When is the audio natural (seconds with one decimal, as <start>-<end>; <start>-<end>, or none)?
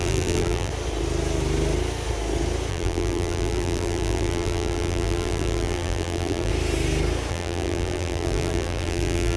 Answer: 0.7-2.7; 6.5-7.3